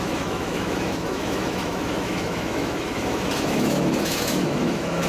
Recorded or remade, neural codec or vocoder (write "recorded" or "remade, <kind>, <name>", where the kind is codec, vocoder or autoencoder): remade, autoencoder, DAC-VAE